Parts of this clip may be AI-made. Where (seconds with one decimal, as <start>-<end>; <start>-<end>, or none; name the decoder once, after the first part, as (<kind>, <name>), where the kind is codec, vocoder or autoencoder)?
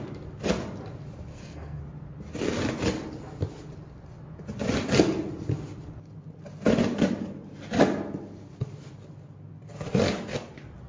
1.3-1.8 (codec, SNAC)